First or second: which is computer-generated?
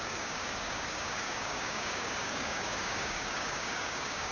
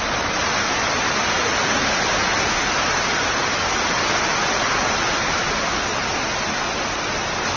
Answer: first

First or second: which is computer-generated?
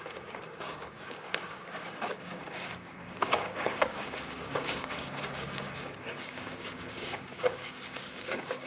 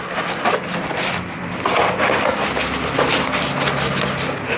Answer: first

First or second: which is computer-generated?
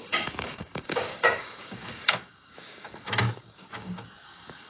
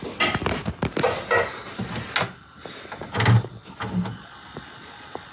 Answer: first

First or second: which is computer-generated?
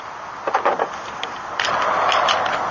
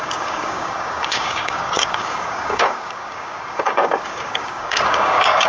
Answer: second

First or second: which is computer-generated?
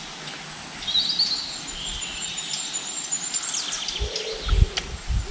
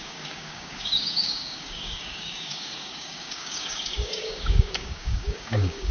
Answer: second